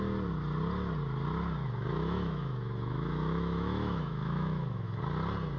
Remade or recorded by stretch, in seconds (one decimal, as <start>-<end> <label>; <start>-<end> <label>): 0.0-1.6 recorded; 1.6-5.0 remade; 5.0-5.6 recorded